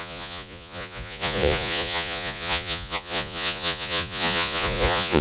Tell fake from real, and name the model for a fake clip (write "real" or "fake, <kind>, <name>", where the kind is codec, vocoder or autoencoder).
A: fake, vocoder, Vocos